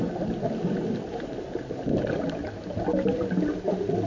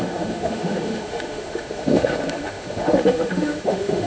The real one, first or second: first